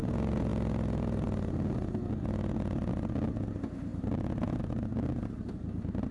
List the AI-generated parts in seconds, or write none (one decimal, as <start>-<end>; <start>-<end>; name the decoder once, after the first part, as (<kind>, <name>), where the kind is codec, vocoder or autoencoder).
3.9-4.6 (vocoder, BigVGAN v2)